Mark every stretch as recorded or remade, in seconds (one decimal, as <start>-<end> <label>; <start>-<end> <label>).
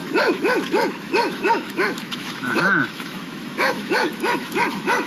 0.0-5.1 remade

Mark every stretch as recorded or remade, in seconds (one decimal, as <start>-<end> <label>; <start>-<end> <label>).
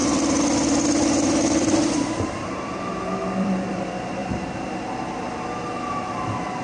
0.0-6.6 remade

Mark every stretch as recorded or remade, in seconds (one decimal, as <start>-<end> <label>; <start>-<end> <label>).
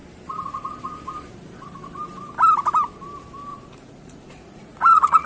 0.0-3.5 recorded; 3.5-5.3 remade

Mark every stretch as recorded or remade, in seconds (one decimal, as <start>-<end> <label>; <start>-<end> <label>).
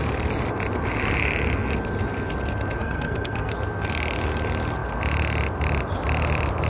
0.0-2.8 recorded; 2.8-3.5 remade; 3.5-6.7 recorded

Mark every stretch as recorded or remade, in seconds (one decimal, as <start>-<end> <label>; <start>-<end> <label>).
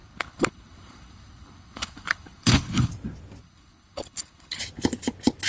0.0-2.9 remade; 2.9-3.4 recorded; 3.4-4.6 remade; 4.6-5.5 recorded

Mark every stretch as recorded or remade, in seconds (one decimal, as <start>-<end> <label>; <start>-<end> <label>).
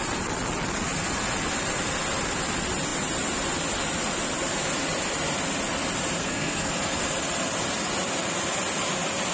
0.0-6.2 recorded; 6.2-6.7 remade; 6.7-9.3 recorded